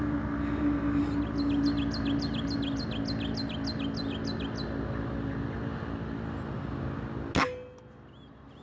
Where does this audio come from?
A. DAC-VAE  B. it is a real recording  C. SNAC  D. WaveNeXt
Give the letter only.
B